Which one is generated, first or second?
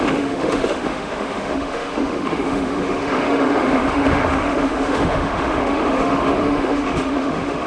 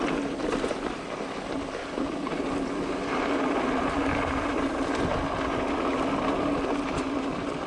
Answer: first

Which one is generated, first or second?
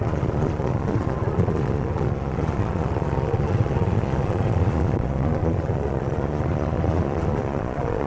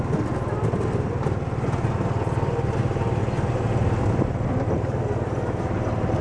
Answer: first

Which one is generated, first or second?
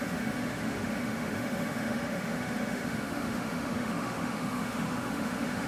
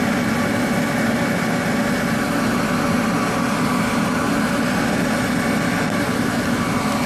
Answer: first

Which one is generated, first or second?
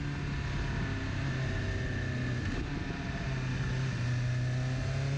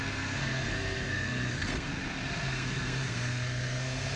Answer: second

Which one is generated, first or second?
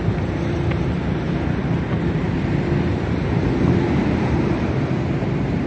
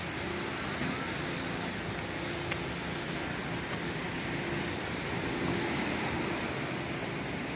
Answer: first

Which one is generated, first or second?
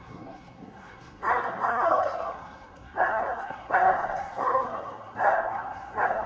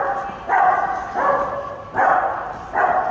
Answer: first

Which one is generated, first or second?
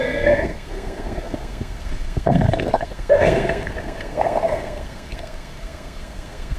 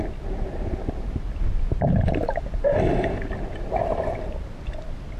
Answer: first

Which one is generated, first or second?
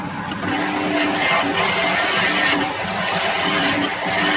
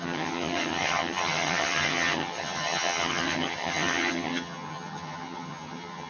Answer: second